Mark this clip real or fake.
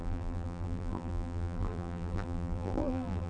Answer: fake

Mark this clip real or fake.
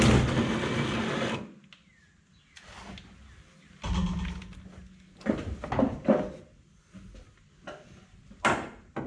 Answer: real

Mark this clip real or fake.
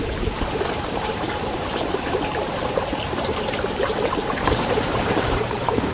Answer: fake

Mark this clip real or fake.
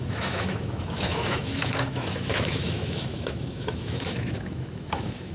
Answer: fake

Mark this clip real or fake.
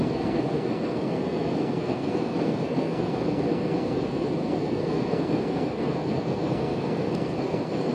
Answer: fake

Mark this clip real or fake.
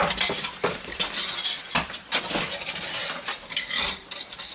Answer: fake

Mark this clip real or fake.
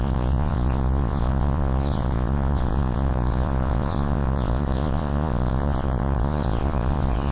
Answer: fake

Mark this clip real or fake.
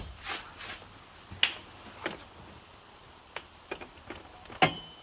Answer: real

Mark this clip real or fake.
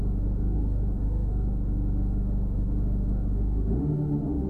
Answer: fake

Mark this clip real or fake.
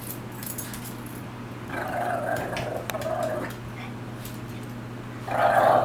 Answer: real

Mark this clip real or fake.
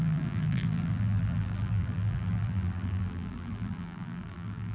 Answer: fake